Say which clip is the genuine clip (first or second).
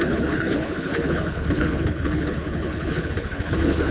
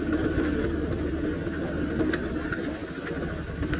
second